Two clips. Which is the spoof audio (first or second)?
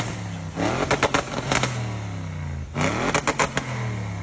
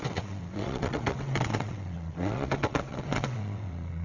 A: second